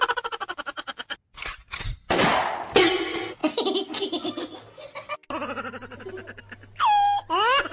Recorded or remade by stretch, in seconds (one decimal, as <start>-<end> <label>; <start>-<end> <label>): 0.0-7.7 recorded